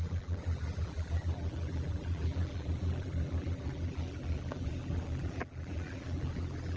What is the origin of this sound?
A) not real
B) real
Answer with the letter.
A